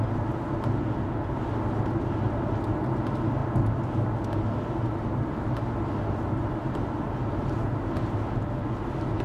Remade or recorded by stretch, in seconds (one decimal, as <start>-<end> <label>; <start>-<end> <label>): 0.0-9.2 recorded